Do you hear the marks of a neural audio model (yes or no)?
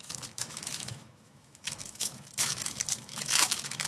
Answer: yes